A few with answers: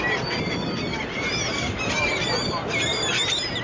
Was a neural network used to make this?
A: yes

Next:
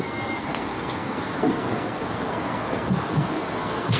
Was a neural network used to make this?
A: yes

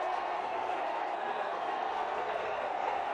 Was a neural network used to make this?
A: yes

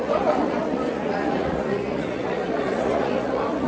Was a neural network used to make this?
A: yes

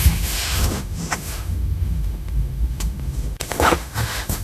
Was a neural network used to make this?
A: yes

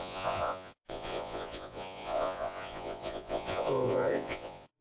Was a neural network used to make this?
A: yes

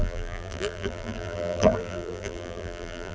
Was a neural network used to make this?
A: yes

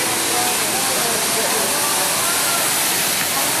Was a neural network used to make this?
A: no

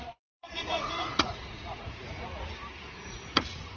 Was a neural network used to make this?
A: yes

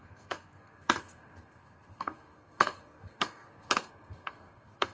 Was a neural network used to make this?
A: yes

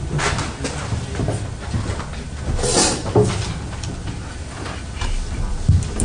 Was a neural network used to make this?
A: no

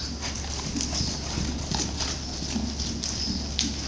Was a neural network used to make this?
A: no